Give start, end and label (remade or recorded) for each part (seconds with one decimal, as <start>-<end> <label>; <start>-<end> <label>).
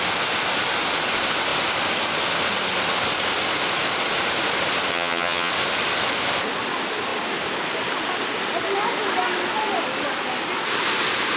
0.0-4.9 recorded; 4.9-5.5 remade; 5.5-11.4 recorded